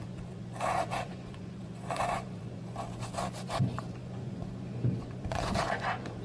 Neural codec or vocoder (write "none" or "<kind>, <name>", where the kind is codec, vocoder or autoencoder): vocoder, Vocos